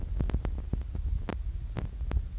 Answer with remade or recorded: recorded